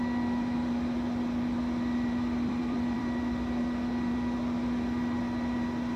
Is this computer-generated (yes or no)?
yes